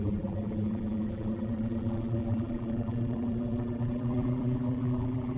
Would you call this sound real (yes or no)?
no